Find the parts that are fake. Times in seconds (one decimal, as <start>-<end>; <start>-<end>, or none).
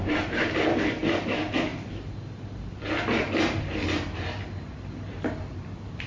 none